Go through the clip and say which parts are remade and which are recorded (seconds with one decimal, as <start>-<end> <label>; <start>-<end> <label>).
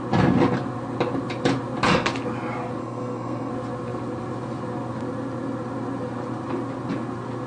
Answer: 0.0-2.8 recorded; 2.8-3.5 remade; 3.5-7.5 recorded